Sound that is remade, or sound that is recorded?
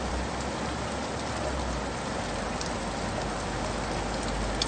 recorded